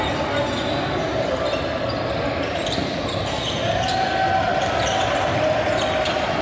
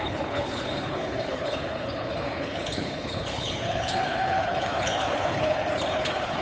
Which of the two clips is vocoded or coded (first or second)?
second